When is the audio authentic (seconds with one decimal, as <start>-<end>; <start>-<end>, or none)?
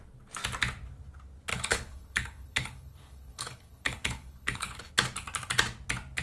0.0-1.5; 4.9-6.2